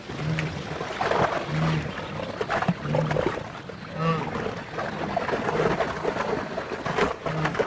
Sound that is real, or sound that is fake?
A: real